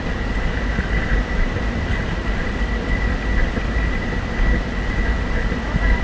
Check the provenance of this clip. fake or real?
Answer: real